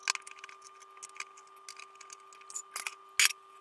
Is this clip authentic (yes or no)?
yes